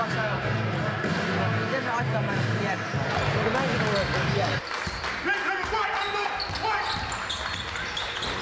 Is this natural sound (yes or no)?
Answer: yes